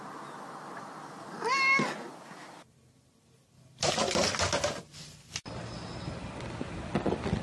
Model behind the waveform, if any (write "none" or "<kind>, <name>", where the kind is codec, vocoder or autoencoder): none